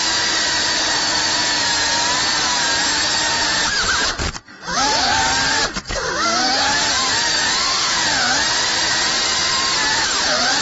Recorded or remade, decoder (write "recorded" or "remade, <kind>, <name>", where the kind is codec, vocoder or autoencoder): recorded